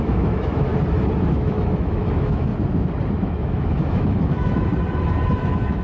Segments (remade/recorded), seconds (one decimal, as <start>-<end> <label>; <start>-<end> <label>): 0.0-0.7 remade; 0.7-1.3 recorded; 1.3-2.5 remade; 2.5-3.1 recorded; 3.1-4.7 remade; 4.7-5.3 recorded; 5.3-5.8 remade